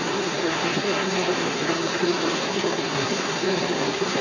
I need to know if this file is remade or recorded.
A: remade